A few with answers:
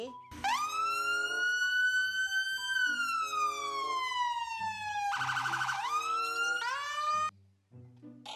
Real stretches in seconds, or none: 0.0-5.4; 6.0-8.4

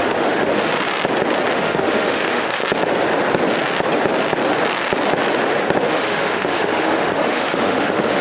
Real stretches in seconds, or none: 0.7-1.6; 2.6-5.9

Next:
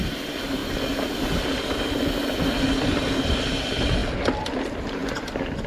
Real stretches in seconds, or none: 0.0-5.7